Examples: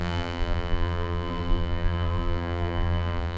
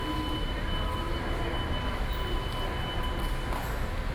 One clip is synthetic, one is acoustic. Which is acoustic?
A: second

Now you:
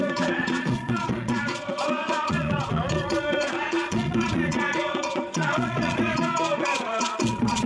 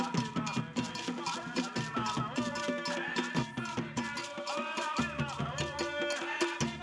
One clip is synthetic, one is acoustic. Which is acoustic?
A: second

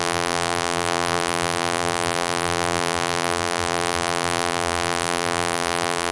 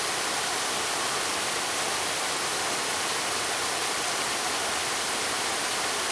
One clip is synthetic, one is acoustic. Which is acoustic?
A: second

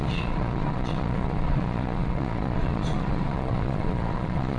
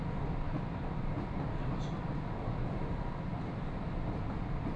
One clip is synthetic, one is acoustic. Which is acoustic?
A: second